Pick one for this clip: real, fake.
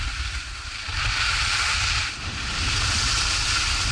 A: fake